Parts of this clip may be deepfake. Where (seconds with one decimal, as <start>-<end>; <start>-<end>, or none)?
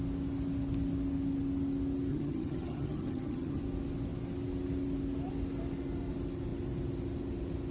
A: 2.1-3.6